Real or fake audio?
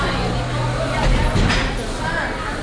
real